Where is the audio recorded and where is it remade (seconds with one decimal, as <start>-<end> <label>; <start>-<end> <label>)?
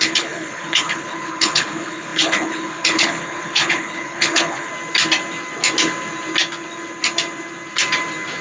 0.0-4.7 remade; 4.7-8.4 recorded